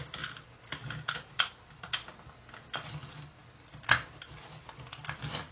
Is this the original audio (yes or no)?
yes